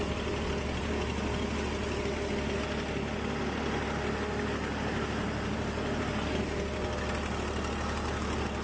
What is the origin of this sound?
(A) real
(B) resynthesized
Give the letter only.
A